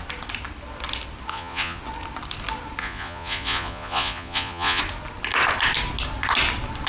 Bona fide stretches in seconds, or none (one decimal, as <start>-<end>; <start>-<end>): 0.0-1.3; 1.8-2.8; 4.8-6.9